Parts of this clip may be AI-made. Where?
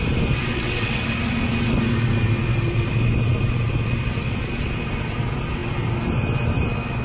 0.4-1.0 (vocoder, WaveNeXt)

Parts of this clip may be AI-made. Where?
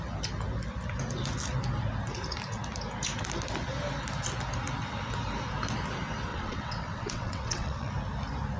6.3-7.9 (vocoder, WaveNeXt)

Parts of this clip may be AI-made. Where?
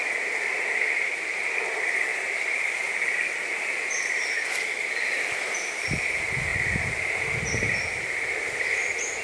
none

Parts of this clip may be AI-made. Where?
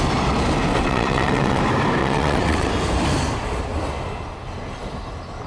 0.7-1.6 (vocoder, WaveNeXt); 2.0-2.7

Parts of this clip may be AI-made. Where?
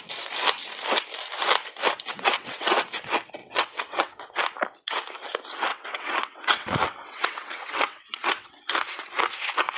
2.1-2.8 (vocoder, WaveNeXt); 3.4-4.4; 5.7-8.7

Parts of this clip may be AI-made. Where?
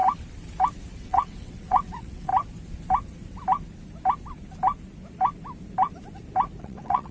1.0-2.3 (vocoder, WaveNeXt); 6.6-7.1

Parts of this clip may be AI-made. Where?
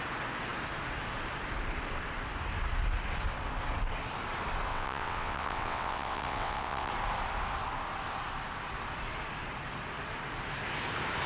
4.7-6.9 (vocoder, WaveNeXt)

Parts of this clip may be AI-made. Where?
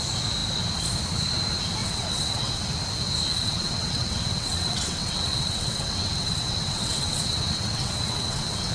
1.8-2.7 (vocoder, WaveNeXt); 3.3-8.7